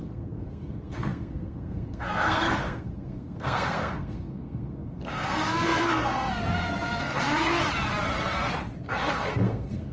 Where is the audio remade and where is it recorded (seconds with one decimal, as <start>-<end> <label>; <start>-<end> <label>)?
0.0-7.6 remade; 7.6-8.8 recorded; 8.8-9.9 remade